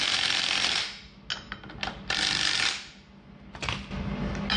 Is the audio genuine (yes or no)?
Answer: yes